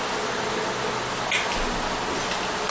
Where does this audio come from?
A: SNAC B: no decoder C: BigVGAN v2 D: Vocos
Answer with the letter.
B